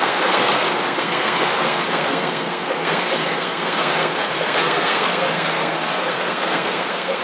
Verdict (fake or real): fake